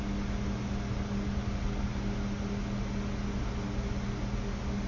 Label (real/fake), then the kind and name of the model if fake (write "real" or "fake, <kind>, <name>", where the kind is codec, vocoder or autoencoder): real